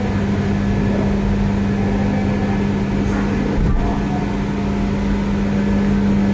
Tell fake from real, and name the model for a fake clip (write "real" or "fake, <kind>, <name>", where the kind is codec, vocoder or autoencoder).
real